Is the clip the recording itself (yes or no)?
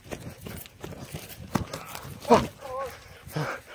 yes